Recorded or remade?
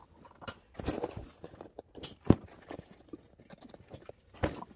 recorded